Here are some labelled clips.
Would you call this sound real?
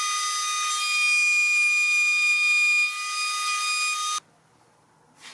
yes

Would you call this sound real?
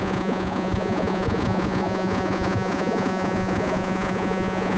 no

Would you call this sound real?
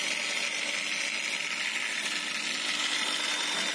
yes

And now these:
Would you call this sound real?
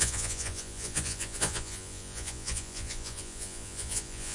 no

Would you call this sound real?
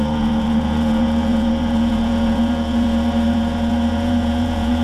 no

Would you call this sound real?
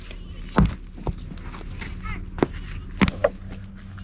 yes